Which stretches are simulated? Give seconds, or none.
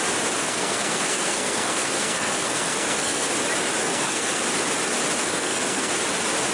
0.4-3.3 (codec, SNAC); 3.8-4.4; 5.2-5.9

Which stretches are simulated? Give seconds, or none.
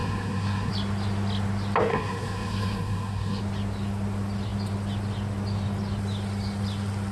0.0-0.7 (codec, SNAC); 1.9-3.4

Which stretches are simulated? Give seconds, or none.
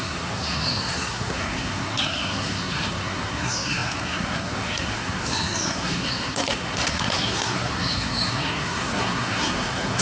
0.0-10.0 (codec, SNAC)